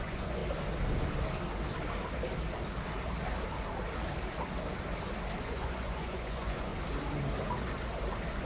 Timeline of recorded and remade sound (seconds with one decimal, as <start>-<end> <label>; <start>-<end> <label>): 0.0-0.4 remade; 0.4-5.4 recorded; 5.4-6.7 remade; 6.7-8.4 recorded